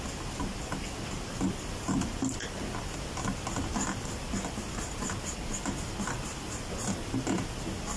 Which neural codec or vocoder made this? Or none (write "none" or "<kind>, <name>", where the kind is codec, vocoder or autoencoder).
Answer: none